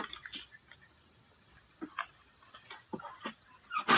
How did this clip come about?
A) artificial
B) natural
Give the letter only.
B